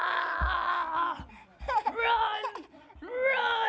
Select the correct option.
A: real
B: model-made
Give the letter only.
A